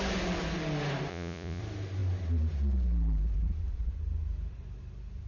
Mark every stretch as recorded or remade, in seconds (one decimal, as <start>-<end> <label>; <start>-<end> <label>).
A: 0.0-1.1 recorded; 1.1-1.6 remade; 1.6-5.3 recorded